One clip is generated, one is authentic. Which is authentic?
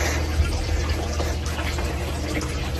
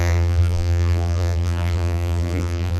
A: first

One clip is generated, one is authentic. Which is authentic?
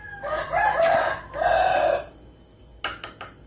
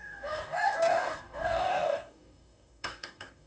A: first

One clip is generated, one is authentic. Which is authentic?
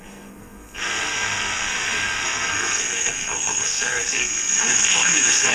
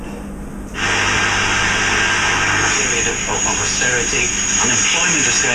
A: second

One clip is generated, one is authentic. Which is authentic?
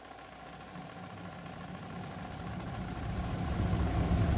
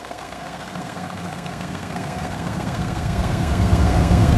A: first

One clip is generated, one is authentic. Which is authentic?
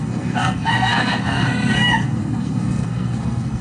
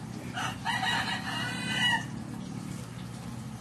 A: second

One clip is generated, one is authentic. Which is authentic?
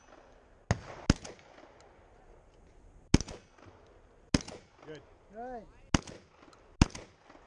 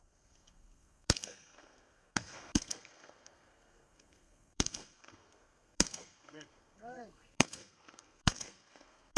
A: first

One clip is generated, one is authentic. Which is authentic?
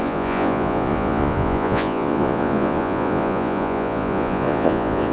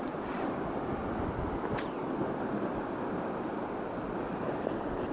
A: second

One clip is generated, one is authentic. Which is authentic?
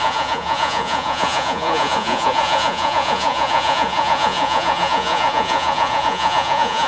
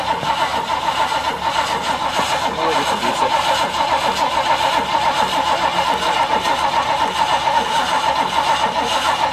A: second